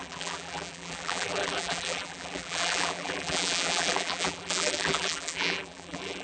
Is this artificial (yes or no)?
yes